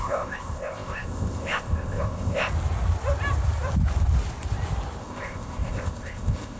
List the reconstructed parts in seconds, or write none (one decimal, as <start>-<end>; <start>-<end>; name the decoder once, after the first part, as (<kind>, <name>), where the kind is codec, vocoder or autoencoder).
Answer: 0.0-2.5 (codec, ZipCodec); 5.0-6.6